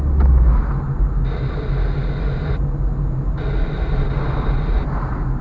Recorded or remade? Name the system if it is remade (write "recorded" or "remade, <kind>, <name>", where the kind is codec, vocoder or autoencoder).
recorded